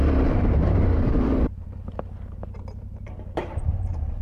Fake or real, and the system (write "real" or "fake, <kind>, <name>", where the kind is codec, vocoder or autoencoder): fake, vocoder, BigVGAN v2